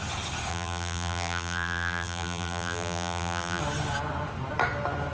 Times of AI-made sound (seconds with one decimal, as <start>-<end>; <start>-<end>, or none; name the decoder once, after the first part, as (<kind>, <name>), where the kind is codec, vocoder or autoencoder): 0.5-3.6 (vocoder, BigVGAN v2)